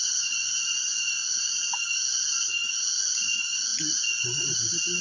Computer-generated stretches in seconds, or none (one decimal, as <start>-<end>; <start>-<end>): none